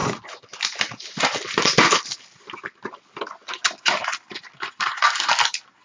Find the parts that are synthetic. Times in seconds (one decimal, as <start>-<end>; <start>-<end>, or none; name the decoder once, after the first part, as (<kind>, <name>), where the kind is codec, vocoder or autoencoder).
none